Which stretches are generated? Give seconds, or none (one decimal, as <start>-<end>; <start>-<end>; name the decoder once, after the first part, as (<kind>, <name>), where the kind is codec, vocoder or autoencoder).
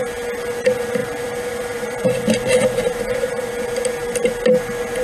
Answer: 1.0-3.5 (vocoder, BigVGAN v2)